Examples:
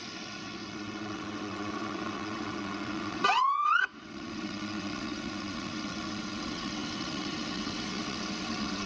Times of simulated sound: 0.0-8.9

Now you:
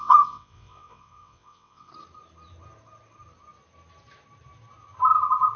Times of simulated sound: 0.0-1.9

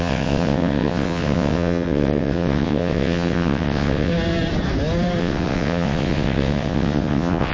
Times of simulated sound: 0.0-4.1; 5.2-7.5

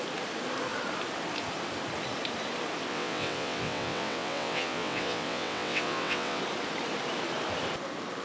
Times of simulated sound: 2.9-6.4

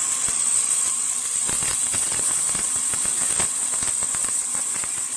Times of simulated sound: 1.9-2.8; 4.2-5.2

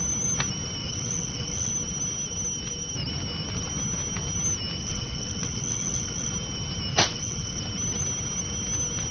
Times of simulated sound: 0.8-1.7; 4.8-6.3; 6.9-7.6

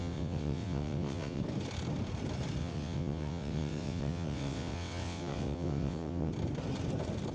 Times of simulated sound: 0.0-1.4; 2.6-6.3